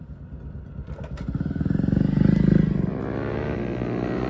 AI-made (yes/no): no